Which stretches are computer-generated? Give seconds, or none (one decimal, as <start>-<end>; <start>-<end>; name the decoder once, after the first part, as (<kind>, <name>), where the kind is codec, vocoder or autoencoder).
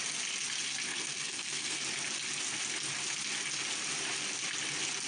0.9-1.8 (codec, SNAC)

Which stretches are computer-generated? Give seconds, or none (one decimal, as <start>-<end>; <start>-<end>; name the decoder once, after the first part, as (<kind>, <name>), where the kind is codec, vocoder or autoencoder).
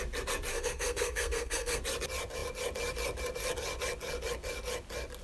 0.5-1.8 (codec, SNAC)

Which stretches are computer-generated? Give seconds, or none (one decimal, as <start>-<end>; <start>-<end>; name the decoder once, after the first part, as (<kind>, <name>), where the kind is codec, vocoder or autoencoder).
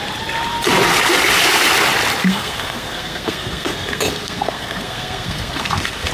2.2-6.1 (codec, SNAC)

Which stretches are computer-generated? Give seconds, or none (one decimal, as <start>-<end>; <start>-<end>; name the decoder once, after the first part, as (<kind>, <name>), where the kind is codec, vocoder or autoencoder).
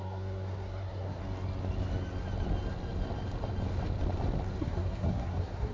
0.0-1.2 (codec, SNAC); 4.6-5.7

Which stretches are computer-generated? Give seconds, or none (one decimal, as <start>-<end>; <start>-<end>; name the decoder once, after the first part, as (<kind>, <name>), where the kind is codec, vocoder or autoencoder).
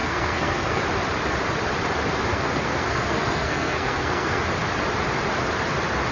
0.0-0.8 (codec, SNAC); 2.3-4.4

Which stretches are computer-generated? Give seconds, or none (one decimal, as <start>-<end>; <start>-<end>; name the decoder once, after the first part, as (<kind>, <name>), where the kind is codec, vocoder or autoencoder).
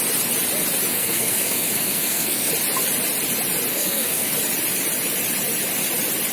0.9-2.5 (codec, SNAC); 3.7-4.3